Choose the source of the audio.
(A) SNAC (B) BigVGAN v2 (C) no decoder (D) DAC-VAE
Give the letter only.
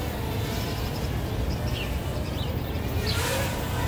C